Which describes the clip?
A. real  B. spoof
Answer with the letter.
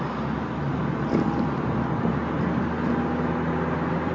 A